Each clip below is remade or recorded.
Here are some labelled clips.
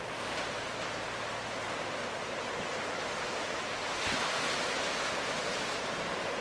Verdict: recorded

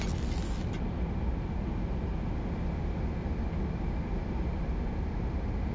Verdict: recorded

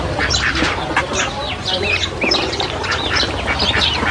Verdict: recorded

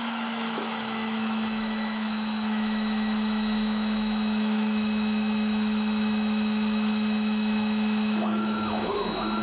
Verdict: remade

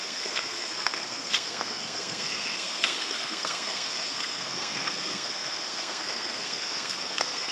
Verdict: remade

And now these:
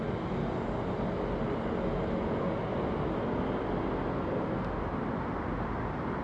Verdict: recorded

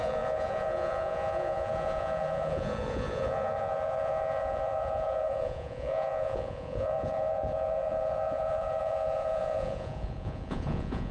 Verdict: remade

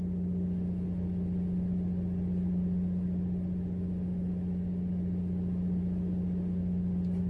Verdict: recorded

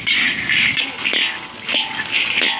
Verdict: recorded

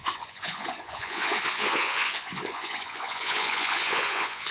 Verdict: remade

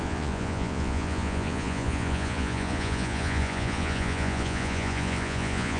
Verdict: remade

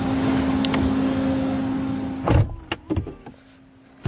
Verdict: recorded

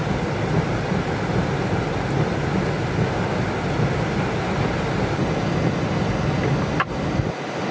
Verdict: recorded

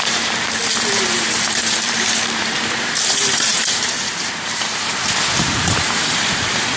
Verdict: remade